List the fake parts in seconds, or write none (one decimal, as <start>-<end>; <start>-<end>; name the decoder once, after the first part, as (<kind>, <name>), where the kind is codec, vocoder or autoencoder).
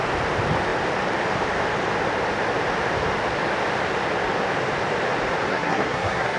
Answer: 5.5-6.4 (codec, SNAC)